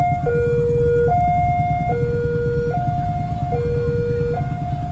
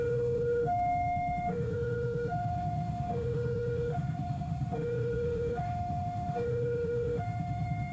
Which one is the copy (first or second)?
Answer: second